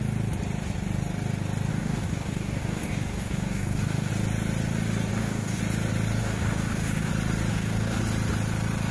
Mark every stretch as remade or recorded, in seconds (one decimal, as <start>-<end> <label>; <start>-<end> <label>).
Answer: 0.0-1.7 recorded; 1.7-4.1 remade; 4.1-5.1 recorded; 5.1-5.6 remade; 5.6-6.2 recorded; 6.2-7.1 remade; 7.1-7.5 recorded; 7.5-8.0 remade; 8.0-8.9 recorded